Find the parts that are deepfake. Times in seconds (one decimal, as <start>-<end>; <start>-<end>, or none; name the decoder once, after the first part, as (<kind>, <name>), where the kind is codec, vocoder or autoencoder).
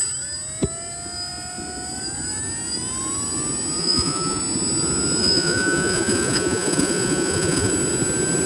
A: 3.8-4.4 (vocoder, Vocos); 5.2-7.7